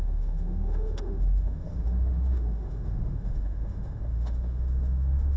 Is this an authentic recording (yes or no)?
no